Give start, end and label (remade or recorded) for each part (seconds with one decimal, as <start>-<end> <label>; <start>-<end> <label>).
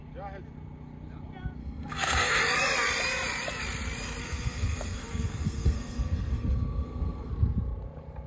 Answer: 0.0-1.6 recorded; 1.6-2.4 remade; 2.4-4.2 recorded; 4.2-7.3 remade; 7.3-8.3 recorded